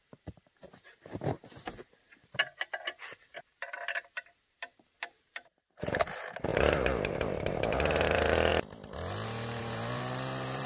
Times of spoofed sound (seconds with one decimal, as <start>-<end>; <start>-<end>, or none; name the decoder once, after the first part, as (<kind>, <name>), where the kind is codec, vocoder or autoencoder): 0.0-3.5 (vocoder, BigVGAN v2); 4.4-8.5; 9.6-10.7